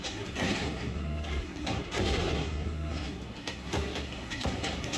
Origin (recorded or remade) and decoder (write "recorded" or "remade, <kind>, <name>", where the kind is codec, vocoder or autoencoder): remade, codec, SNAC